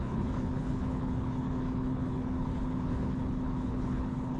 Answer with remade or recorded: remade